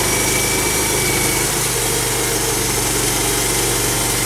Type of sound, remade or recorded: recorded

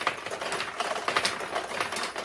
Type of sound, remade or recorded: recorded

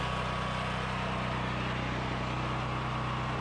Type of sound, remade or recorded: recorded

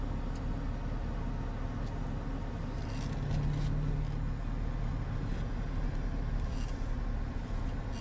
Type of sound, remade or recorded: recorded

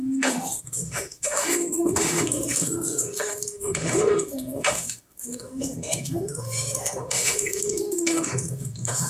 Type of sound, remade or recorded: remade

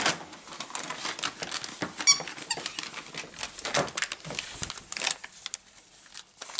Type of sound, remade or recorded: recorded